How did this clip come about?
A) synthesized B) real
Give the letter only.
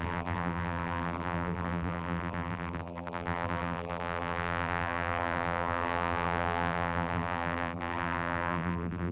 A